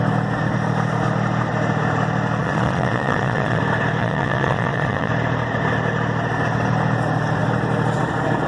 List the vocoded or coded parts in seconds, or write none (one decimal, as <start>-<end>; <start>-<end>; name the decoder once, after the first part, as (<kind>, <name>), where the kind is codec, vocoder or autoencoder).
2.4-3.6 (vocoder, Vocos); 4.0-5.1